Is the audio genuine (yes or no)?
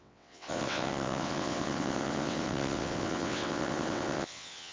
no